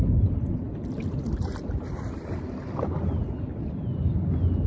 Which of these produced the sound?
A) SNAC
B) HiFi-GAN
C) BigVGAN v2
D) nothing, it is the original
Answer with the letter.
D